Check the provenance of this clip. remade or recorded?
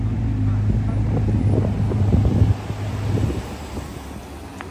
recorded